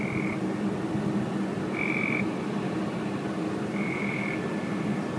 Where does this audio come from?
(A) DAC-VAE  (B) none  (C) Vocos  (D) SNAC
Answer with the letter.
B